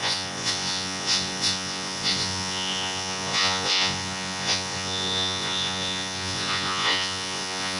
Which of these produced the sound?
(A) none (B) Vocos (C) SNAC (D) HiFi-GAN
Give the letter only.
B